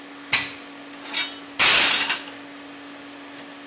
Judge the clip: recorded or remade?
recorded